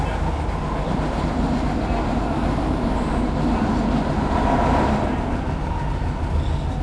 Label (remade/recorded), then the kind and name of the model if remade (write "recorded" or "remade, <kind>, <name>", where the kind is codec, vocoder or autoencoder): recorded